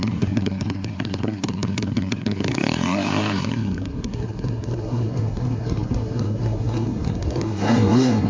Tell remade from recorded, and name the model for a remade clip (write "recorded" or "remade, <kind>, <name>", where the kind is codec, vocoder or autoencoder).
remade, codec, SNAC